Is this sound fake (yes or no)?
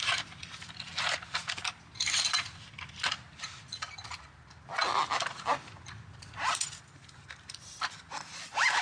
no